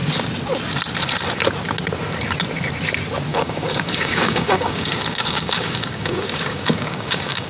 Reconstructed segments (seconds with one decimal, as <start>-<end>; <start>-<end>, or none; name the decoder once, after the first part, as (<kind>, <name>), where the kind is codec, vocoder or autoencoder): 3.3-7.5 (codec, DAC)